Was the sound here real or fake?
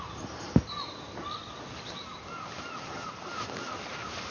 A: real